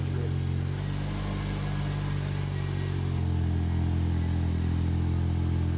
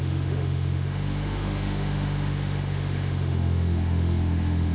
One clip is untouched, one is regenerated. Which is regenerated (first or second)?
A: second